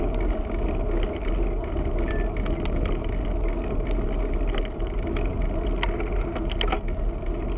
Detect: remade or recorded recorded